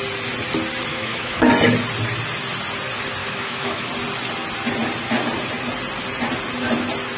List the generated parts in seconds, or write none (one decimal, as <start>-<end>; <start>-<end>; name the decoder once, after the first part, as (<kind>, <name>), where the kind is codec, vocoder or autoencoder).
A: 0.9-1.5 (autoencoder, DAC-VAE); 3.2-3.9